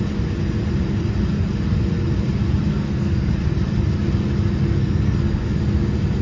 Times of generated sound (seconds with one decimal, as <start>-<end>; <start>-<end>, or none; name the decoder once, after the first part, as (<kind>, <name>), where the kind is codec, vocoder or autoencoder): 2.7-3.3 (codec, SNAC); 4.8-5.6